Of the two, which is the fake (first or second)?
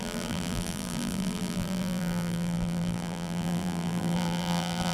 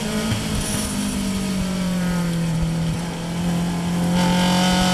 first